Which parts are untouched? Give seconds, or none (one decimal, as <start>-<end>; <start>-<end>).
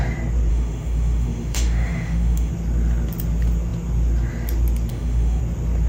0.0-0.5; 2.5-4.9; 5.4-5.9